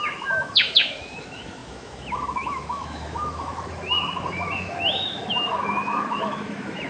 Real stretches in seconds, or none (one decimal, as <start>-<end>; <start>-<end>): none